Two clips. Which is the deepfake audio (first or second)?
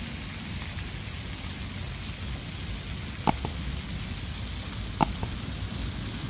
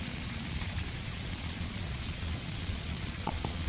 second